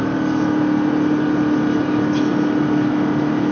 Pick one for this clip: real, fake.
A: real